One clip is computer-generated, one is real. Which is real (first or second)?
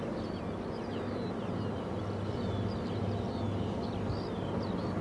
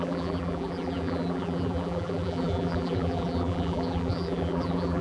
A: first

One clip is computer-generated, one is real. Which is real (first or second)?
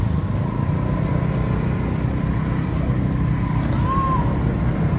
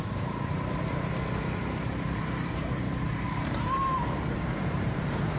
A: first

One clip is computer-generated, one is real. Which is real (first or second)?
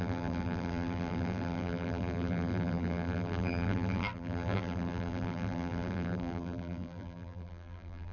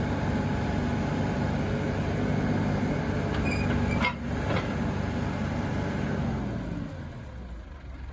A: second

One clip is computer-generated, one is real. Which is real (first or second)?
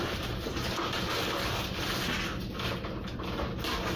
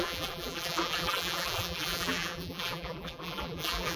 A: first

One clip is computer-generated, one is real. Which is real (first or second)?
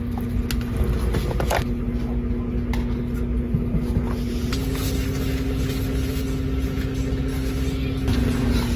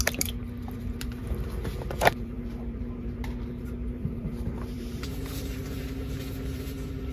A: first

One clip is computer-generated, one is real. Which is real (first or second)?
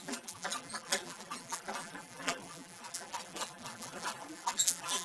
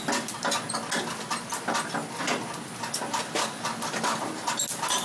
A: second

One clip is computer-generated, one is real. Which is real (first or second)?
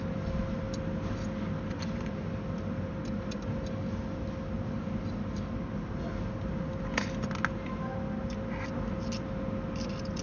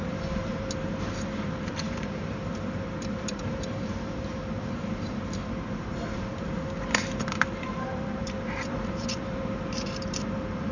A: first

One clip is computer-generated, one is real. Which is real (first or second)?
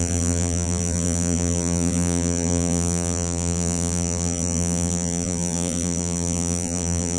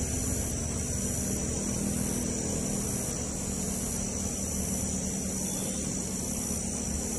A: second